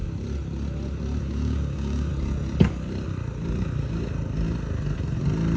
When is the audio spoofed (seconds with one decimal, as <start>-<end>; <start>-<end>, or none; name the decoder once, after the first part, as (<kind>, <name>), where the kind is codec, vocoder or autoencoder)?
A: 1.2-2.1 (codec, DAC)